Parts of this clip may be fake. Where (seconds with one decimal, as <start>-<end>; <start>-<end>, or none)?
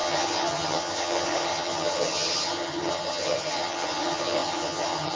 0.0-5.2